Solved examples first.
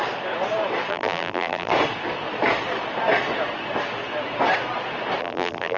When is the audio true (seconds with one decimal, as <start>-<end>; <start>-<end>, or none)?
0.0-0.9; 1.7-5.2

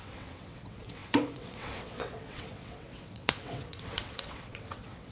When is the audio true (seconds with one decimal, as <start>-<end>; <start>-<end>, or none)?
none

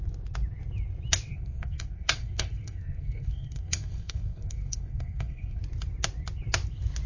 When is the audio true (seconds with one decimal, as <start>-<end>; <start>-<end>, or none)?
0.0-1.3; 5.6-7.1